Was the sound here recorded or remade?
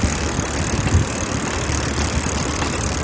recorded